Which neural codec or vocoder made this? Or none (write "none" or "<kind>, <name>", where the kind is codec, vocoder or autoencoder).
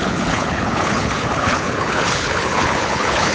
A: codec, HILCodec